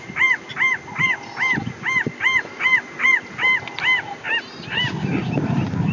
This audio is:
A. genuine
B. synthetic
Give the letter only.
A